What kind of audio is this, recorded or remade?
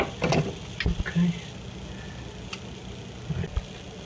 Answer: recorded